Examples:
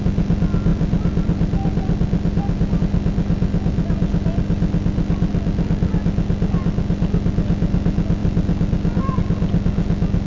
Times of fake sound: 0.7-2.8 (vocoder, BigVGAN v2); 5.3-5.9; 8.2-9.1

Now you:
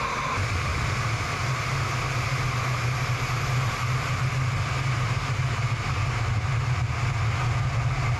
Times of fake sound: none

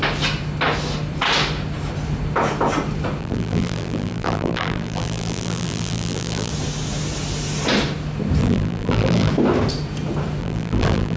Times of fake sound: 3.2-6.5 (vocoder, BigVGAN v2); 8.4-9.3; 10.4-11.2

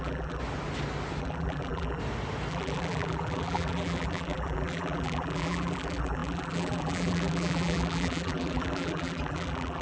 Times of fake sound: 0.0-0.4 (vocoder, BigVGAN v2); 1.2-2.0; 2.5-9.8

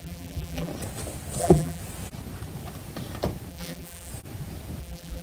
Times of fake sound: 0.0-0.7 (vocoder, BigVGAN v2); 1.4-1.8; 3.5-4.1; 4.8-5.2

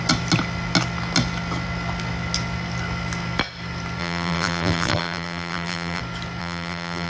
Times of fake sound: 4.0-6.0 (vocoder, BigVGAN v2); 6.4-7.1

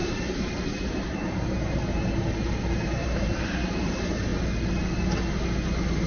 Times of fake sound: 0.0-4.3 (vocoder, BigVGAN v2)